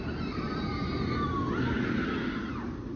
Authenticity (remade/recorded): recorded